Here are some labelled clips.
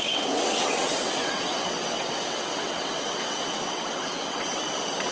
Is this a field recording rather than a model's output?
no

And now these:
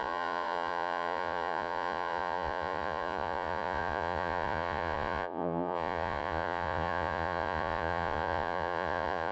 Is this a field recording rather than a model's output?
no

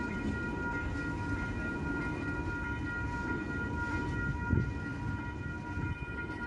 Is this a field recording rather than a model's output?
yes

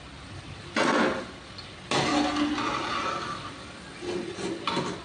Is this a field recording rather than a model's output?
yes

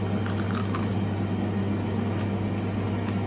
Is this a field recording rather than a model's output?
yes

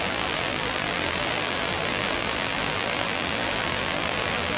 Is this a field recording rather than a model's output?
no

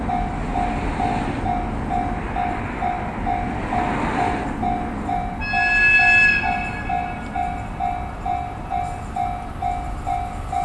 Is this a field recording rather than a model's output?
yes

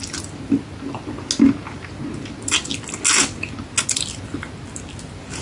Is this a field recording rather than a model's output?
yes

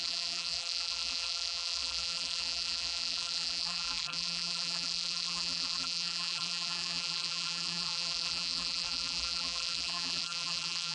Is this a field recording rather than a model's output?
no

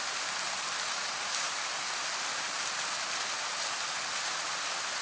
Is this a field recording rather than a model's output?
yes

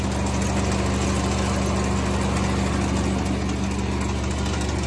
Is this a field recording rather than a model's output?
yes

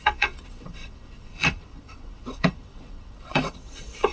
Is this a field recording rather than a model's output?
no